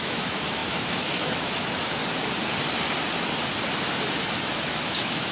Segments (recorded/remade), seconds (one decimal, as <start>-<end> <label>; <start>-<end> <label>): 0.0-2.0 remade; 2.0-4.5 recorded; 4.5-5.3 remade